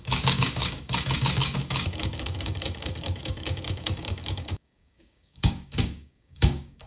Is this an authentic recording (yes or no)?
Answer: no